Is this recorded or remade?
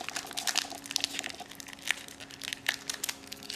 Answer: recorded